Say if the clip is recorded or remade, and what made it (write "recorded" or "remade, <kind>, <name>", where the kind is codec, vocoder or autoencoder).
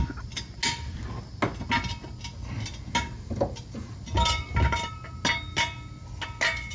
recorded